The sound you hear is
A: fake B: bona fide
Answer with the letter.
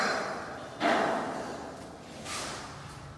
B